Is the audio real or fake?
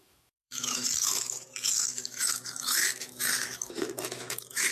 fake